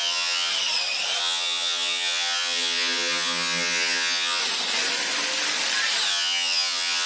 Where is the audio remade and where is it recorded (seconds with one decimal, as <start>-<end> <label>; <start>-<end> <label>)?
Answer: 0.0-0.5 remade; 0.5-1.2 recorded; 1.2-4.4 remade; 4.4-6.1 recorded; 6.1-7.1 remade